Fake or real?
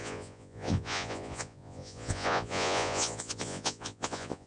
fake